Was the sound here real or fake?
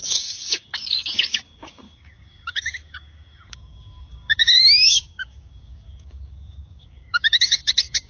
fake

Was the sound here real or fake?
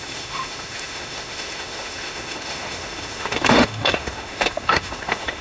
fake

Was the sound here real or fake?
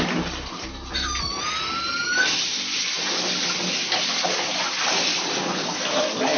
real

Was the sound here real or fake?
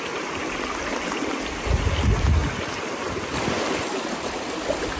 real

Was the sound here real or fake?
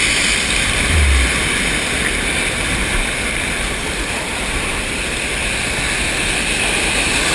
real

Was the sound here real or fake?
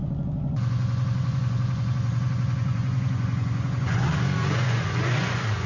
fake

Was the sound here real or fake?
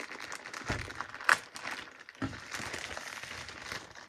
real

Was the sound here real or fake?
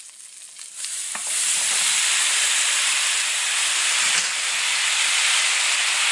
real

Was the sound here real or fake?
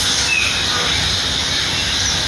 real